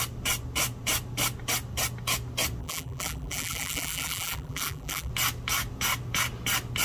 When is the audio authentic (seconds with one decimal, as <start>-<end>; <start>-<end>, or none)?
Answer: 0.0-2.6; 5.1-6.8